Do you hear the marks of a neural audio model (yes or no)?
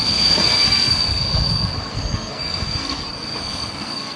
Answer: yes